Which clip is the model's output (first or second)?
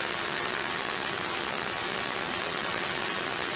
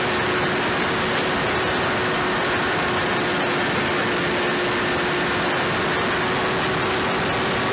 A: first